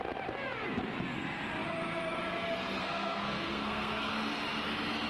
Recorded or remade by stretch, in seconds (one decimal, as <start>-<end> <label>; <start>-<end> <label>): 0.0-2.8 recorded; 2.8-4.1 remade; 4.1-5.1 recorded